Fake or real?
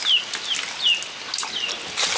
real